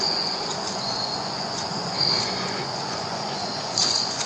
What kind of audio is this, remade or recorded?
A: remade